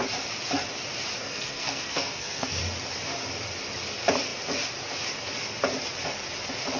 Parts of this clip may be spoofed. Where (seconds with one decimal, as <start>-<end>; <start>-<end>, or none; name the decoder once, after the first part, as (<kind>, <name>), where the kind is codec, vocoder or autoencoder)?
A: 1.2-2.6 (codec, SNAC)